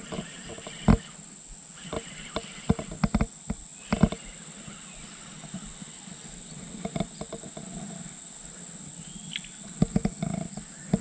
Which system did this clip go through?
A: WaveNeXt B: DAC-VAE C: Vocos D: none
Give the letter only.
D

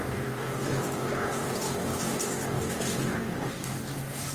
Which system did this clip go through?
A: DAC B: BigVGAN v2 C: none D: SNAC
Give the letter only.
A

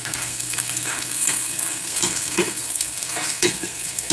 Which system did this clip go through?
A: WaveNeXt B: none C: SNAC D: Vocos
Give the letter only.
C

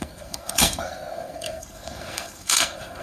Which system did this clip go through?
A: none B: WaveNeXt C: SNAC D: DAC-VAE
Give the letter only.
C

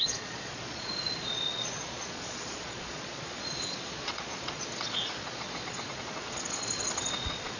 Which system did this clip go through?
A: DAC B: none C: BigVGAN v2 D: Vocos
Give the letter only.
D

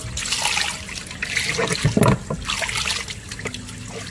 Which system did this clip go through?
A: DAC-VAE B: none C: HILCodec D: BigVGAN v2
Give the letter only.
B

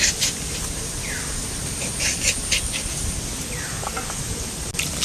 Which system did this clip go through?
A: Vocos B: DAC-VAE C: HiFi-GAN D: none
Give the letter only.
D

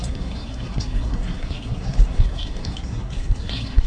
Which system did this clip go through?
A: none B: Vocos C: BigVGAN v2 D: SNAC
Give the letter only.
D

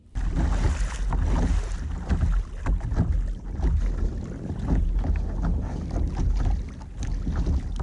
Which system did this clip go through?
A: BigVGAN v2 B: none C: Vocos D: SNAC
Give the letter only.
B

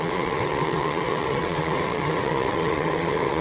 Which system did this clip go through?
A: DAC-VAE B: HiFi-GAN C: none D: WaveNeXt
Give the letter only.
D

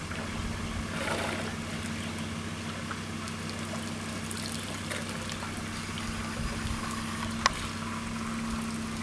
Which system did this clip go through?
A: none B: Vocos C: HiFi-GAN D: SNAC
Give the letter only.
A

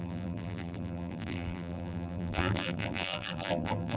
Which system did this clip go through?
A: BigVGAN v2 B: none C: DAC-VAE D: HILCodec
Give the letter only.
A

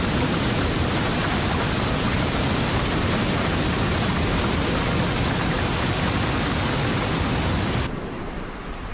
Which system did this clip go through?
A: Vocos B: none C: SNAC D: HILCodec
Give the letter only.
B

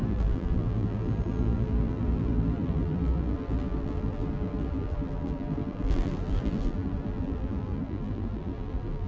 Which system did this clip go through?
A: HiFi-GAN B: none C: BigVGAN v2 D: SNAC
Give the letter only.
C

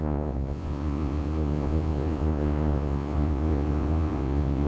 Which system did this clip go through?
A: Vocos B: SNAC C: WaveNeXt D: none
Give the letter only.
A